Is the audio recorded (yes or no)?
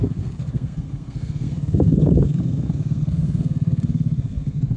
no